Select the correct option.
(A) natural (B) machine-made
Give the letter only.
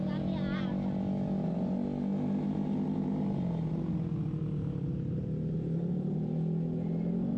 A